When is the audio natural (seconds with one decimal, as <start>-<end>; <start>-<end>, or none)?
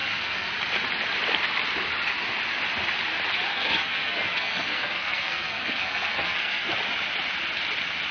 0.5-3.5; 6.7-8.1